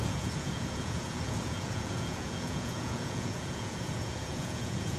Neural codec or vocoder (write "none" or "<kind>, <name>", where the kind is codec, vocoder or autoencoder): vocoder, Vocos